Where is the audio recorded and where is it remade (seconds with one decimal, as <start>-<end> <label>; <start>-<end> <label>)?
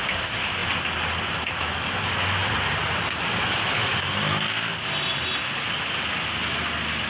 0.0-7.1 recorded